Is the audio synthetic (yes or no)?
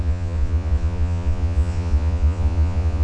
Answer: yes